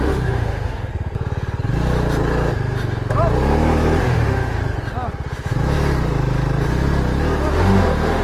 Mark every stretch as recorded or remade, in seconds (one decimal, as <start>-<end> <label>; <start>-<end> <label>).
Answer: 0.0-0.9 remade; 0.9-4.0 recorded; 4.0-4.6 remade; 4.6-7.5 recorded; 7.5-8.2 remade